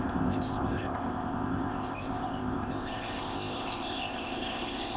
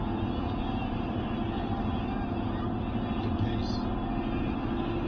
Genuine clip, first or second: second